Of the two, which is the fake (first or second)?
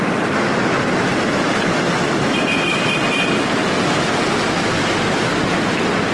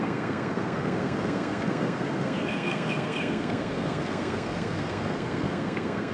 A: second